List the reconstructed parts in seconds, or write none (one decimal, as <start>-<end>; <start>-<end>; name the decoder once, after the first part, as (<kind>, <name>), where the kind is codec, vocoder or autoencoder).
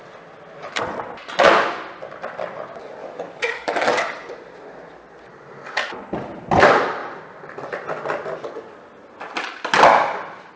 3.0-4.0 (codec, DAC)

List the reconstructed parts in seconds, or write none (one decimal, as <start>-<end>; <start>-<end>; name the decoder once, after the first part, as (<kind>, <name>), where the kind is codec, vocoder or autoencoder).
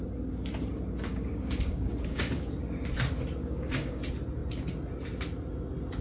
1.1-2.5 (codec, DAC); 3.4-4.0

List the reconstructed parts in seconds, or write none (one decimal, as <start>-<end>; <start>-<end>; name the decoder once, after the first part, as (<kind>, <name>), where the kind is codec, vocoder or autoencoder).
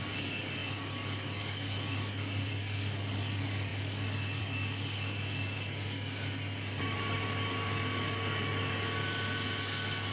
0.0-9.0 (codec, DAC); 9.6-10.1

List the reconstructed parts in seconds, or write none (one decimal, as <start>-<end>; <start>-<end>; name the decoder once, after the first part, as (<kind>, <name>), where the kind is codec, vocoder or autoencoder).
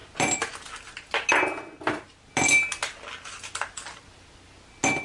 none